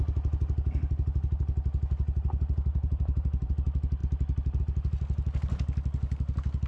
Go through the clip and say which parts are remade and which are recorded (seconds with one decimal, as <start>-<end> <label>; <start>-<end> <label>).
0.0-2.7 recorded; 2.7-3.5 remade; 3.5-6.7 recorded